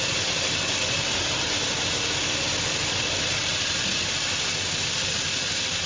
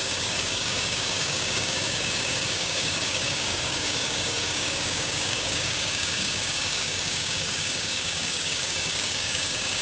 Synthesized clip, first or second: second